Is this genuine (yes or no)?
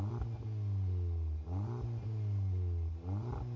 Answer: yes